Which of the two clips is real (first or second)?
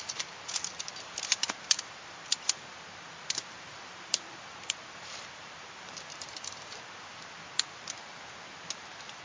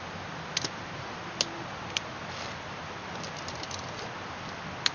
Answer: second